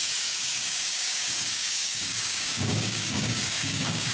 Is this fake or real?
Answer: fake